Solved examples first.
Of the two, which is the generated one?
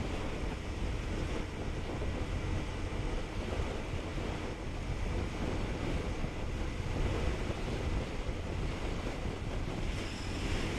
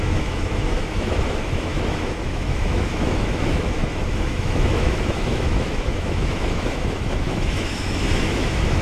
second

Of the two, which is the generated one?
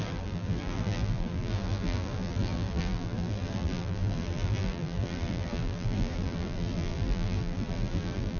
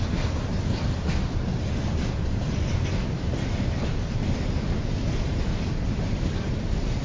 first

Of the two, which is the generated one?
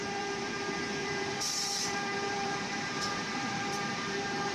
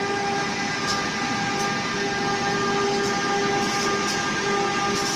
first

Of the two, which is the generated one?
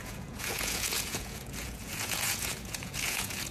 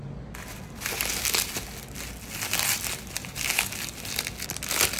first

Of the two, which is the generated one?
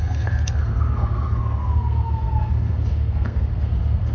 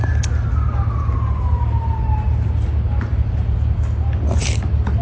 first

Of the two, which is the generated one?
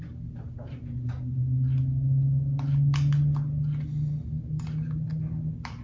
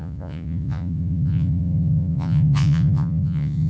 second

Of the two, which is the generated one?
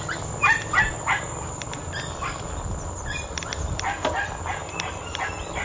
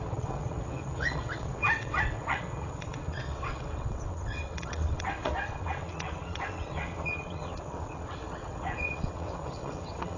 second